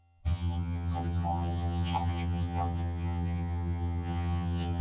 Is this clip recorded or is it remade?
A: remade